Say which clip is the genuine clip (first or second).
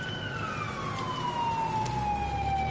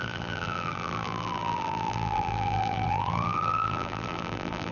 first